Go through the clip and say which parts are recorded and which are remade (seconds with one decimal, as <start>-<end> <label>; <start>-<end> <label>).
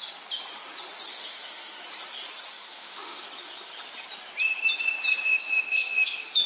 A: 0.0-1.1 recorded; 1.1-1.8 remade; 1.8-2.5 recorded; 2.5-3.2 remade; 3.2-5.3 recorded; 5.3-6.5 remade